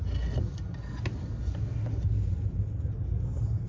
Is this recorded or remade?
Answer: recorded